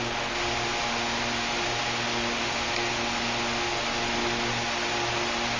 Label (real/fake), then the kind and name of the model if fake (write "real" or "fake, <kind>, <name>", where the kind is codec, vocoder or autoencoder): real